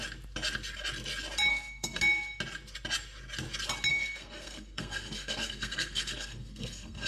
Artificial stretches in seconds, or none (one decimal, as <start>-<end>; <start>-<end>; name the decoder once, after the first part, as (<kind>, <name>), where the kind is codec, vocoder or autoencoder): 1.5-2.0 (codec, SNAC); 3.9-7.1